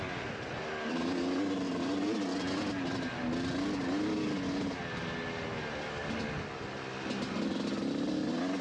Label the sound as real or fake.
real